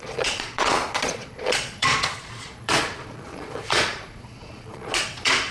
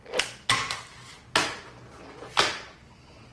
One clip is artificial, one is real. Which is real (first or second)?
second